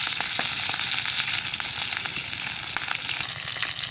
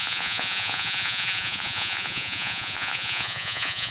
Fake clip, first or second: second